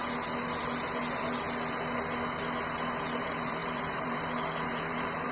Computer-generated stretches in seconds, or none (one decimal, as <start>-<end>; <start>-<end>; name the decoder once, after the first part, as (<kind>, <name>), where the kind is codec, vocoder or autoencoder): 3.2-5.3 (vocoder, BigVGAN v2)